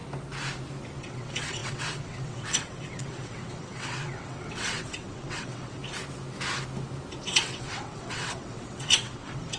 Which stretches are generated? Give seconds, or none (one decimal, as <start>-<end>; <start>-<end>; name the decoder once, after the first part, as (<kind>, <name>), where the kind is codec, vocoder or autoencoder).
1.0-5.8 (vocoder, WaveNeXt); 7.3-9.6